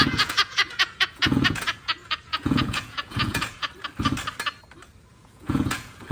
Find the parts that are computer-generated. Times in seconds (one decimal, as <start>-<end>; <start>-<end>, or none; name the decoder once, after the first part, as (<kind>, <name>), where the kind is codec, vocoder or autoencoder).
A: 0.0-3.7 (vocoder, Vocos); 5.1-6.1